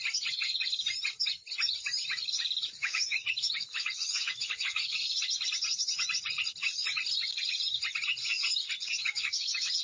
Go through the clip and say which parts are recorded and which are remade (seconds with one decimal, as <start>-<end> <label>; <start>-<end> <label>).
0.0-2.8 recorded; 2.8-4.9 remade; 4.9-9.0 recorded; 9.0-9.8 remade